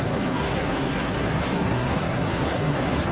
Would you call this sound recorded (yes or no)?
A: no